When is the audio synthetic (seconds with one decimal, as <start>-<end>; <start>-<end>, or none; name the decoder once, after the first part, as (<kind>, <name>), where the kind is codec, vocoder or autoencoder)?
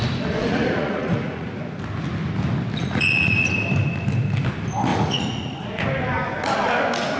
0.4-1.5 (vocoder, Vocos); 2.8-3.5; 4.9-5.9